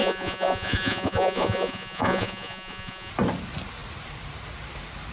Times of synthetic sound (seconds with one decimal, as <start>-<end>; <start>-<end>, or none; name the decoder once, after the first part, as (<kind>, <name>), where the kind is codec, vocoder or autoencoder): 0.0-3.1 (vocoder, Vocos)